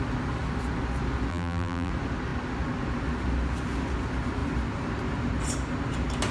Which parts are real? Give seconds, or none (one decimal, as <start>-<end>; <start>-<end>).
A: 0.0-1.3; 1.9-6.3